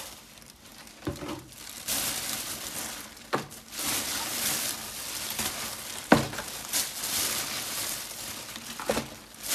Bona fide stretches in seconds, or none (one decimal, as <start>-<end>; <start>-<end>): 0.0-0.7; 4.8-9.5